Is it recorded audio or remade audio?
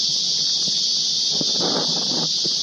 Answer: recorded